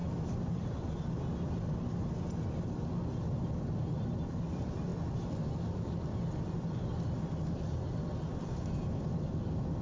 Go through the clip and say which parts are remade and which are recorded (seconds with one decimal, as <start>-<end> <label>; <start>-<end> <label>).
0.0-9.8 recorded